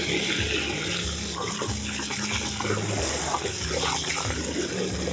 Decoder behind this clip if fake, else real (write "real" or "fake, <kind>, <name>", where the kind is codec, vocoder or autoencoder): real